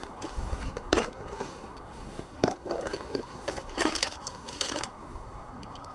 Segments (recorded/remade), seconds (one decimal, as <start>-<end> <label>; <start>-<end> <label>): 0.0-5.9 remade